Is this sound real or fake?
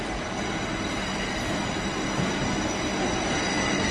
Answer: real